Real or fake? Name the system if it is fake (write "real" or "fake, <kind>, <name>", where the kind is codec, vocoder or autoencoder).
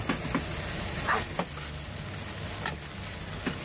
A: real